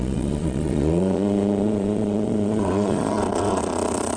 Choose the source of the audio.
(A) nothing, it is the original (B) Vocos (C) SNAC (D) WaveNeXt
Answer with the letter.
B